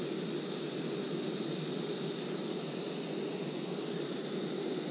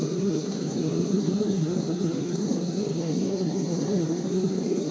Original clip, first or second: first